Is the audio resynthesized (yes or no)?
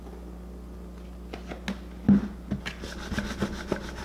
no